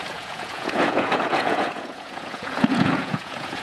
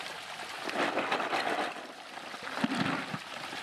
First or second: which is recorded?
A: second